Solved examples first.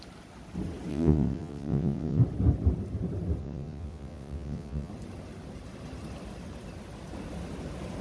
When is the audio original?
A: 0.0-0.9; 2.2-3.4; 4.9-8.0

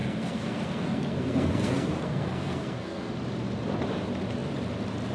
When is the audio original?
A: 3.1-5.1

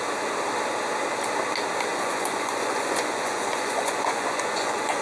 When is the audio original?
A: 0.0-1.9